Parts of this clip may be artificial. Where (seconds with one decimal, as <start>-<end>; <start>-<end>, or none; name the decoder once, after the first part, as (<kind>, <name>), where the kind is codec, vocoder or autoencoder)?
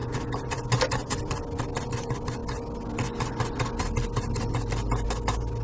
none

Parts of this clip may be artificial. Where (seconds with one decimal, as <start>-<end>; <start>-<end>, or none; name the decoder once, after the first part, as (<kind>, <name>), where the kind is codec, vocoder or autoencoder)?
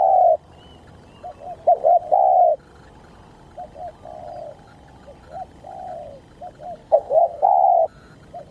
6.8-7.5 (codec, SNAC)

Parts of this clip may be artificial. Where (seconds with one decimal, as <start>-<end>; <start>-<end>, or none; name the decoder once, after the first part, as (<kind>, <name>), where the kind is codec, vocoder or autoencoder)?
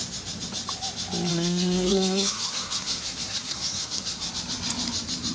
1.3-4.3 (codec, SNAC)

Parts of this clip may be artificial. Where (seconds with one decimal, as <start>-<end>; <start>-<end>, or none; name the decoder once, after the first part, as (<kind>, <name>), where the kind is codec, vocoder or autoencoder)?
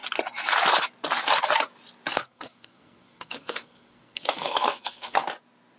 2.1-5.2 (codec, SNAC)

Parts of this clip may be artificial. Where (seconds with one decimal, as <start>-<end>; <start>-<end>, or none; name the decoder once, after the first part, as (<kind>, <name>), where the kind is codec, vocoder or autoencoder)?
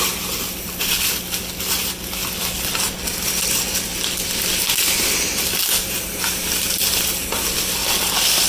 none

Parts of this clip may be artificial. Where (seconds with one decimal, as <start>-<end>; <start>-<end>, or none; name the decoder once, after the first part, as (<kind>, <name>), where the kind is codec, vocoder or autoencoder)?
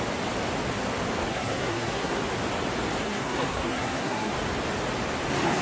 1.3-2.2 (codec, SNAC); 3.0-4.3